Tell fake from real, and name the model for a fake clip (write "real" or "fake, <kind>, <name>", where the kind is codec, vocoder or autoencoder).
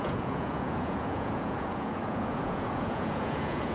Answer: fake, vocoder, Vocos